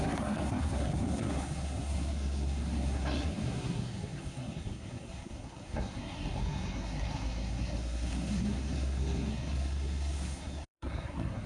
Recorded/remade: remade